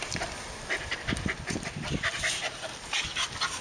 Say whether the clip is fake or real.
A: real